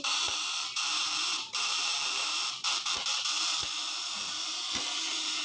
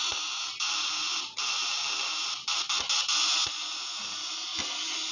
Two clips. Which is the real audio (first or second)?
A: second